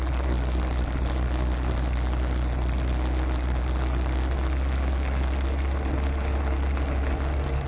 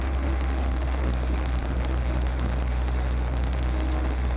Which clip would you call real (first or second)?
first